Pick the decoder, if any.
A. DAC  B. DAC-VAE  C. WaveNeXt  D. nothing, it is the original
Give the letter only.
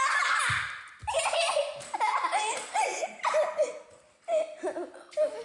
D